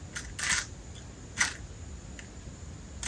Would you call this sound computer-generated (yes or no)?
no